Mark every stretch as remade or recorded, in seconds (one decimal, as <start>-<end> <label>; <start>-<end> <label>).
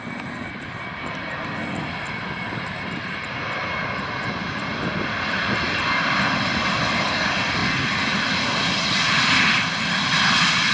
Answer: 0.0-10.7 recorded